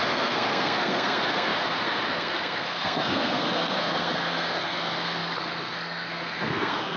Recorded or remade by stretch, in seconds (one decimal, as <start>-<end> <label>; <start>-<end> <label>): 0.0-7.0 remade